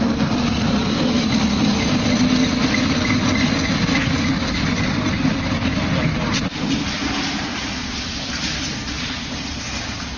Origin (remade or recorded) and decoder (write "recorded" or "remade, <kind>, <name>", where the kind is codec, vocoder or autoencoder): recorded